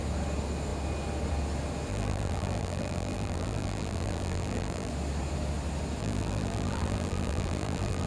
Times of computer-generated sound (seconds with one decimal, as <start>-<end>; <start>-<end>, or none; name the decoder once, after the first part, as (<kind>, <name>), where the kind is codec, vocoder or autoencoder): 1.9-4.9 (vocoder, BigVGAN v2); 6.0-8.1

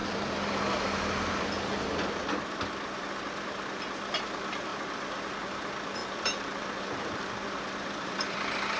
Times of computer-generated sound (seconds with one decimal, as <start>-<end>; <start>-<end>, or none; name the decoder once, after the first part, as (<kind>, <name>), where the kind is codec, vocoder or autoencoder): 0.0-0.6 (vocoder, BigVGAN v2); 4.7-5.3; 6.0-8.8